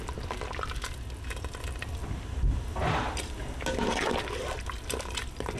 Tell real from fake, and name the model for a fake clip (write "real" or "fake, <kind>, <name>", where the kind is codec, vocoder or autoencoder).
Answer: real